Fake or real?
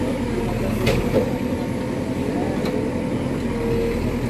real